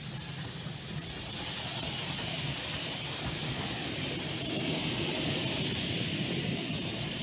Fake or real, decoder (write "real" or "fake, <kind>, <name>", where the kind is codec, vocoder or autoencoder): real